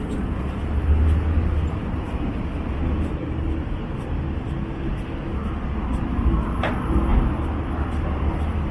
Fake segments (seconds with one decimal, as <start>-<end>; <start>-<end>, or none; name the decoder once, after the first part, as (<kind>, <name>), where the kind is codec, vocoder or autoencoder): none